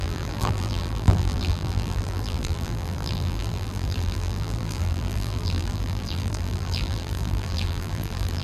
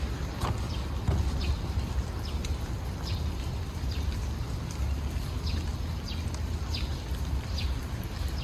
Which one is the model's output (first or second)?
first